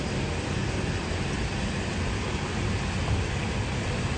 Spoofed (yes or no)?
no